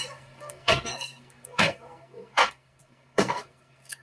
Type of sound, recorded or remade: remade